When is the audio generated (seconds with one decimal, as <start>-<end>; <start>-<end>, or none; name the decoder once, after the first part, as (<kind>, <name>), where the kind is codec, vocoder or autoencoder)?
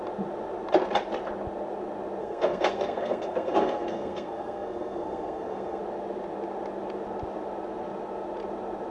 2.2-5.8 (codec, SNAC)